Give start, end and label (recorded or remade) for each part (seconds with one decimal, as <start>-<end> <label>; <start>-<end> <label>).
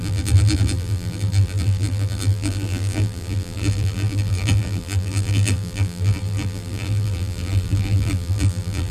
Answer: 0.0-8.9 remade